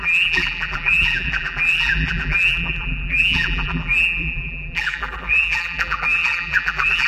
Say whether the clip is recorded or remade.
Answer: remade